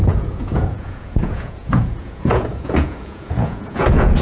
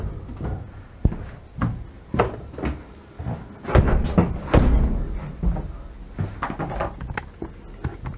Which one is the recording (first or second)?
second